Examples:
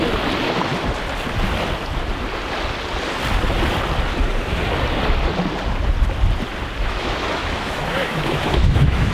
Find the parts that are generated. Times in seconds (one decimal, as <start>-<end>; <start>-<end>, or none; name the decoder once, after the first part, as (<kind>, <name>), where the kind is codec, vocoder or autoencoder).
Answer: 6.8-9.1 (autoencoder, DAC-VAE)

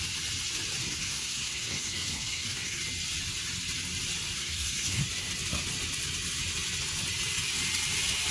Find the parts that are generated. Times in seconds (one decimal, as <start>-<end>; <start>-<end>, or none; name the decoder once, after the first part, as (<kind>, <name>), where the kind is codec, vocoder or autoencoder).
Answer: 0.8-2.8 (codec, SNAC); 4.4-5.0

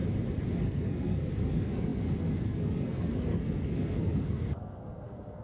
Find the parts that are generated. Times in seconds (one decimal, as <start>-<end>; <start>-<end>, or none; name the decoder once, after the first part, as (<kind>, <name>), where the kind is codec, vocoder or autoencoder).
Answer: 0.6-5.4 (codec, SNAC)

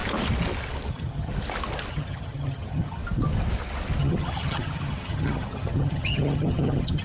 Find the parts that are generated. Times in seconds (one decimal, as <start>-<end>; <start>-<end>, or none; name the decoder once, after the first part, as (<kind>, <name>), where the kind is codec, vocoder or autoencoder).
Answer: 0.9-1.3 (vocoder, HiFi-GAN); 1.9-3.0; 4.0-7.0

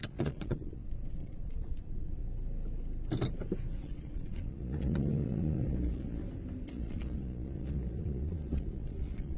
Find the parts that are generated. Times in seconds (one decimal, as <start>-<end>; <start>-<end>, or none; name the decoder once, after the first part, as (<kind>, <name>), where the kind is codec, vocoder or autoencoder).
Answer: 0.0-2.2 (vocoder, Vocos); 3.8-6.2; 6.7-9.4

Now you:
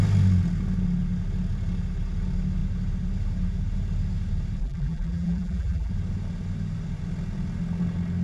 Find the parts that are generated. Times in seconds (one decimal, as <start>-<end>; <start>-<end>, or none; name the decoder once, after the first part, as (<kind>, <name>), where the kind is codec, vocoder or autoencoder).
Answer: 4.6-5.9 (vocoder, BigVGAN v2)